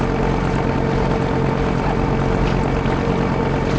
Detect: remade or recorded recorded